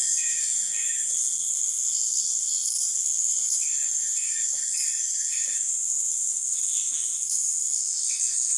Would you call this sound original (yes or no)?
no